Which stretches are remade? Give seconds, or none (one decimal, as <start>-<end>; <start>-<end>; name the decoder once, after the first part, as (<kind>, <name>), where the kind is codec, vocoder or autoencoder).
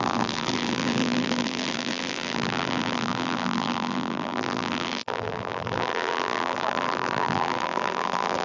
0.0-8.4 (vocoder, BigVGAN v2)